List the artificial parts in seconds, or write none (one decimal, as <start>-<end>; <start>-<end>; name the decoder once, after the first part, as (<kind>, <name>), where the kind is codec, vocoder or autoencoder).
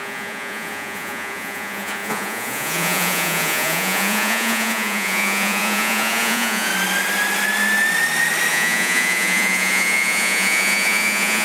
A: 0.0-6.7 (vocoder, Vocos); 8.5-11.4